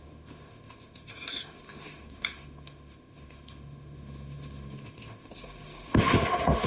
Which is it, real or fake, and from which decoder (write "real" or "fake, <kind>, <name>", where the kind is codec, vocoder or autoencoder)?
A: fake, autoencoder, DAC-VAE